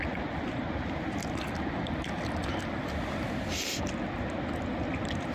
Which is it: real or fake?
real